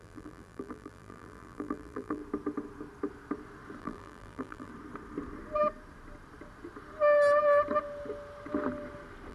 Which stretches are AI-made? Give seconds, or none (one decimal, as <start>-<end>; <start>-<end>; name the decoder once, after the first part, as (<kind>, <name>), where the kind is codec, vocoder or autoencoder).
0.0-2.2 (vocoder, BigVGAN v2); 3.8-4.7